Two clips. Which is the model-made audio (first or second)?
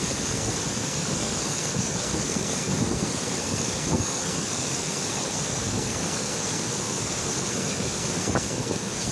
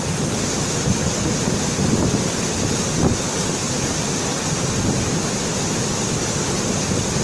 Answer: first